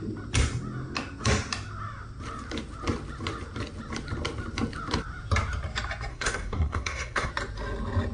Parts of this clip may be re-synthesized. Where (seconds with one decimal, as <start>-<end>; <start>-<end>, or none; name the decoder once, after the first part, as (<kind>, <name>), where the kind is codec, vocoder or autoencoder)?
6.1-7.3 (codec, SNAC)